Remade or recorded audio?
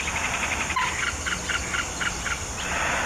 recorded